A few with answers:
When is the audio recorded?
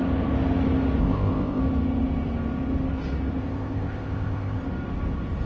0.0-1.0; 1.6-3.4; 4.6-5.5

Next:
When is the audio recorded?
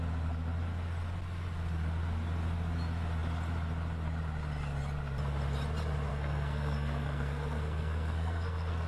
0.0-6.1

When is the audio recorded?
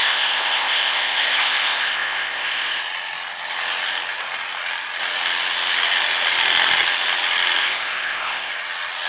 2.8-7.6; 8.5-9.1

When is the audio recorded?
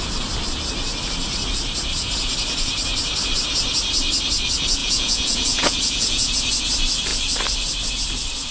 0.0-4.8; 6.3-8.5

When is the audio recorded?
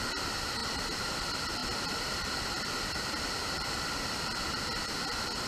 0.6-1.2